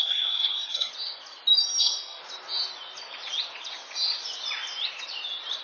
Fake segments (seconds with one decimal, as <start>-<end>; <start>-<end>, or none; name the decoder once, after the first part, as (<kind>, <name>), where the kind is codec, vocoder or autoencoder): 0.0-0.9 (codec, SNAC); 1.8-2.2